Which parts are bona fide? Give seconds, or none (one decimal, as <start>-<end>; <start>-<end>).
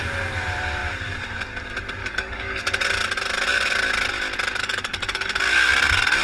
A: 0.0-2.0; 2.6-4.6; 5.4-6.2